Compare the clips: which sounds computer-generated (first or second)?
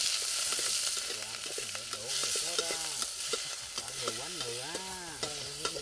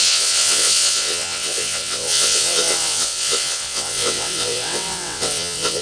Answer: second